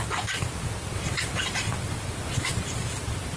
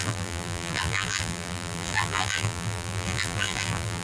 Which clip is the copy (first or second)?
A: second